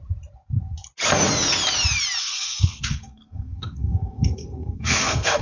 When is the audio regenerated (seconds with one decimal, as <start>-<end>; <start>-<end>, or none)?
2.2-5.4